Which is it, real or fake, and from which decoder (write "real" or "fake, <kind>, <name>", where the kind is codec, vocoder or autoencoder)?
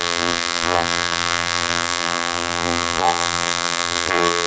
fake, vocoder, BigVGAN v2